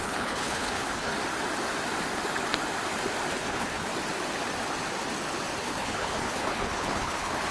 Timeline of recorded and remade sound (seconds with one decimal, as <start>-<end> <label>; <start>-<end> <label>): 0.0-1.1 remade; 1.1-3.3 recorded; 3.3-3.9 remade; 3.9-5.6 recorded; 5.6-7.5 remade